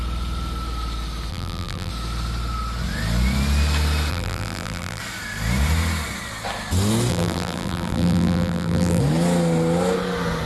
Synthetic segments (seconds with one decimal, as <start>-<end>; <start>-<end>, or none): 1.3-1.9; 4.1-5.0; 7.1-9.0